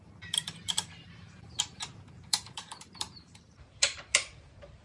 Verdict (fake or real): fake